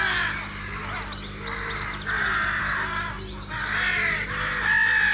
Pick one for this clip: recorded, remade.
recorded